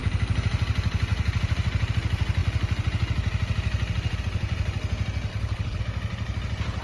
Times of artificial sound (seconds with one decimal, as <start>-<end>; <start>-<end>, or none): 5.3-5.8